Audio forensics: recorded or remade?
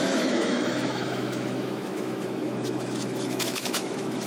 remade